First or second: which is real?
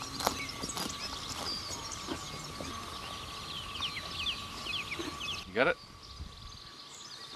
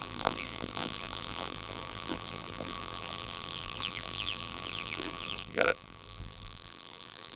first